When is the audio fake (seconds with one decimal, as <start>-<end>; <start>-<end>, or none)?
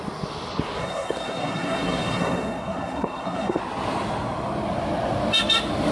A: 0.8-3.6